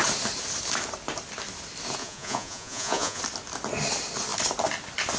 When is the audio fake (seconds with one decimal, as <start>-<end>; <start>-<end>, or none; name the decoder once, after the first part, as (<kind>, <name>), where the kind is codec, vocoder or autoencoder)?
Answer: 2.0-3.2 (vocoder, Vocos)

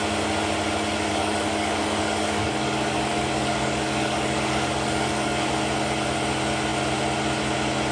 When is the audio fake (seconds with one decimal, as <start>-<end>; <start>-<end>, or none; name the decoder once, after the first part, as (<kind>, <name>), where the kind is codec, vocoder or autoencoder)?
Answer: 1.1-5.5 (codec, DAC)

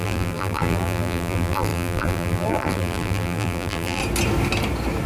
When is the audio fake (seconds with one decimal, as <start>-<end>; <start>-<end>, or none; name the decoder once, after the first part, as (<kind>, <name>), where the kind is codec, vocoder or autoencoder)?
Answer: 0.0-4.0 (vocoder, BigVGAN v2)

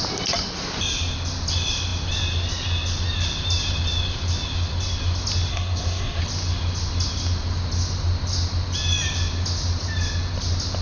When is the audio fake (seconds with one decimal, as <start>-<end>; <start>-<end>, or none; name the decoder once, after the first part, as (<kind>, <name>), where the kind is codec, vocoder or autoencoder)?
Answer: 5.5-6.2 (codec, SNAC)

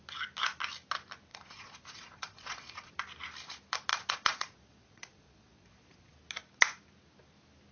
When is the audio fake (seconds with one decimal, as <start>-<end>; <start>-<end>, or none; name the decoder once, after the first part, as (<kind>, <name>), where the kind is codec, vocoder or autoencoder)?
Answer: 1.3-2.9 (vocoder, Vocos); 3.9-6.1

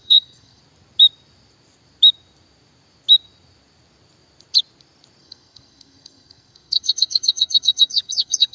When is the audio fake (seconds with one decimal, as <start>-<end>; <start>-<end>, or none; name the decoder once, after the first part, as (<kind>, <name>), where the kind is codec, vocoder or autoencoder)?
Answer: 0.0-0.6 (codec, SNAC); 5.2-8.5

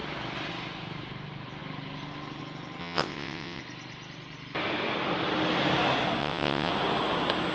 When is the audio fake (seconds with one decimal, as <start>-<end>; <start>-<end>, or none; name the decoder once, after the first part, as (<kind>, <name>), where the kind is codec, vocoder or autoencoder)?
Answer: 2.8-3.6 (vocoder, WaveNeXt); 6.2-6.7